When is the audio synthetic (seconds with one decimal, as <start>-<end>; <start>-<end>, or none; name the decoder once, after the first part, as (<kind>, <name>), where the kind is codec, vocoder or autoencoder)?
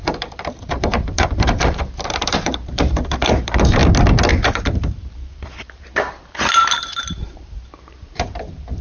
0.0-3.8 (vocoder, BigVGAN v2); 4.3-8.8